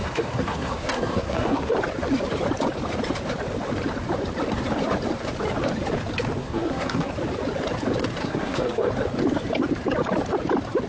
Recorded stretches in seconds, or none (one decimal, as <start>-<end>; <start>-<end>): 1.7-6.4; 7.1-8.2; 8.9-10.9